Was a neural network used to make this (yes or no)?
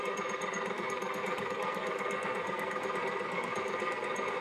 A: yes